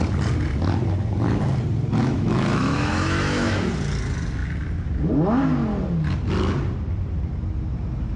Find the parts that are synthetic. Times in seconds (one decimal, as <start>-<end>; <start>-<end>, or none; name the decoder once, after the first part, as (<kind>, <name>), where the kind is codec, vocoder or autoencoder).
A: 2.0-3.7 (autoencoder, DAC-VAE)